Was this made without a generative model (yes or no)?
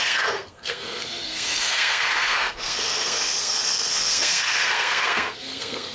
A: no